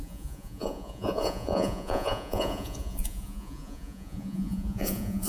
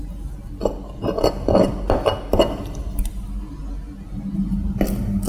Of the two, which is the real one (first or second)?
second